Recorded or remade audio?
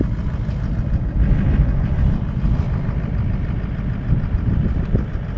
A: recorded